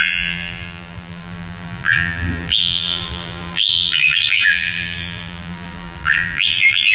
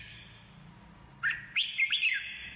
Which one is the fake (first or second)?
first